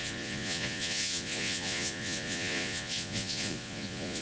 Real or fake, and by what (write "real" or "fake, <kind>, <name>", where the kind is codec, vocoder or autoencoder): fake, vocoder, Vocos